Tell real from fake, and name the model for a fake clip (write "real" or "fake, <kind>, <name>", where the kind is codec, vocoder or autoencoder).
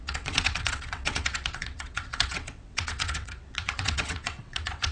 fake, vocoder, WaveNeXt